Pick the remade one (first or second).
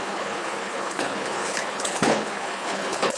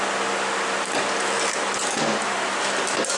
first